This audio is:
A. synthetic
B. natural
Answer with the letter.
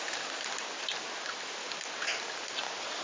B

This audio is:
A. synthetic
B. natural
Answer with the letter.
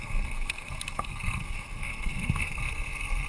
A